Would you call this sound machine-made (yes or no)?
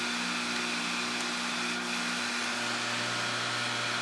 no